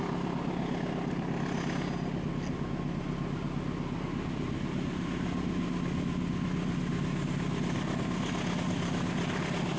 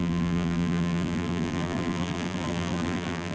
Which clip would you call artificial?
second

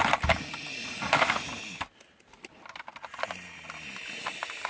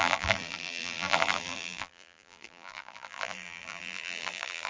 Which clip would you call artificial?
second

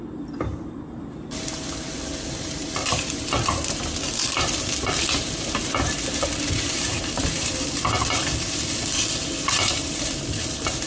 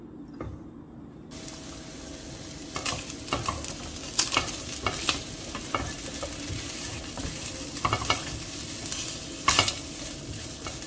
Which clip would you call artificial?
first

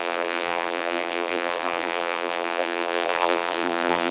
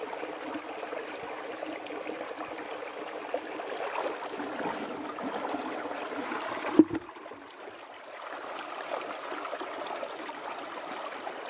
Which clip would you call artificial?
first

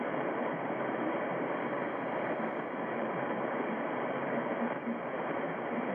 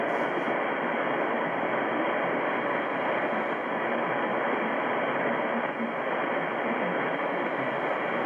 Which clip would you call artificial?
first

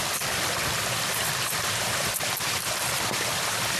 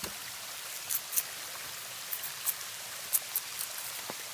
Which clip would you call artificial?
first